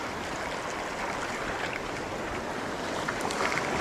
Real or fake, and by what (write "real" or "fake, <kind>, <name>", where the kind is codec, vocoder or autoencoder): real